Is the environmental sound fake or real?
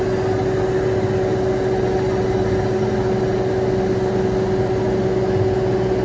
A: real